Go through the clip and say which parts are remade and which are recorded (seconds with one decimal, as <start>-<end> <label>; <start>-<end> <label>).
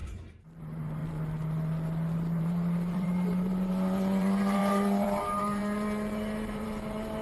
0.0-1.0 remade; 1.0-2.4 recorded; 2.4-7.2 remade